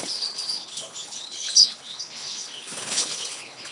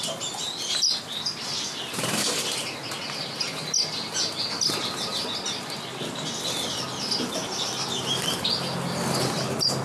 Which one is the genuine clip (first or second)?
second